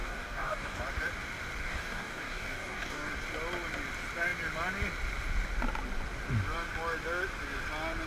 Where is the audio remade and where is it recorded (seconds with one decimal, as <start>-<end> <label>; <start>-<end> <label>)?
0.0-0.8 remade; 0.8-1.6 recorded; 1.6-3.1 remade; 3.1-8.1 recorded